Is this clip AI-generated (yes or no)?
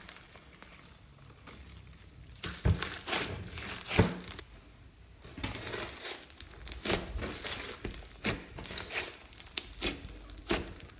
no